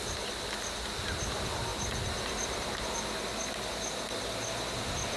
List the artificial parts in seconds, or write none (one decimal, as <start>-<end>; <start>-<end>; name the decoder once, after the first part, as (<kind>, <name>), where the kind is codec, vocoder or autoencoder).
none